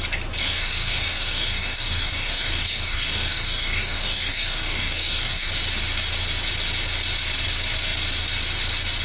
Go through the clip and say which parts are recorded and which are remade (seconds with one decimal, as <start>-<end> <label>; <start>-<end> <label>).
0.0-0.4 recorded; 0.4-5.5 remade; 5.5-9.0 recorded